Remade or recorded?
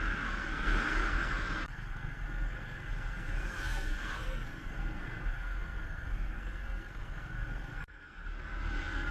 remade